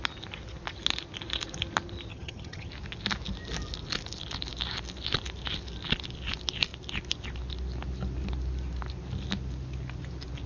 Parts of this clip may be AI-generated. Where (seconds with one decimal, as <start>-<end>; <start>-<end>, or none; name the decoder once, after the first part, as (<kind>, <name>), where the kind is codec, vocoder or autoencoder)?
2.1-2.7 (vocoder, HiFi-GAN)